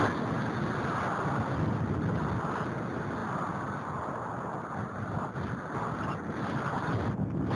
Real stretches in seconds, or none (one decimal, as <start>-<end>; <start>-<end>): 0.0-7.6